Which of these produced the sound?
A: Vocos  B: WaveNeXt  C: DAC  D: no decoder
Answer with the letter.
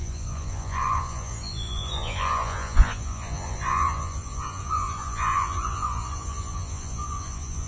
A